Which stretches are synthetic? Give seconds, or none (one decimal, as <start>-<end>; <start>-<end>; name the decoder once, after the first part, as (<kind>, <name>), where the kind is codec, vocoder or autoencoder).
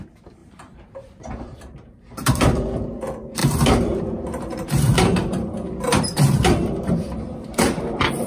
0.4-2.4 (vocoder, BigVGAN v2); 3.4-8.3